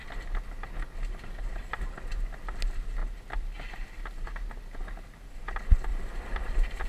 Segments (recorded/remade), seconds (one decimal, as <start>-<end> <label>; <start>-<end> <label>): 0.0-5.9 recorded; 5.9-6.9 remade